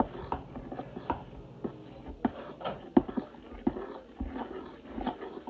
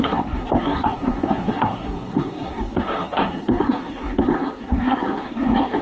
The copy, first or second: second